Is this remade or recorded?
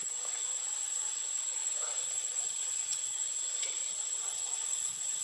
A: remade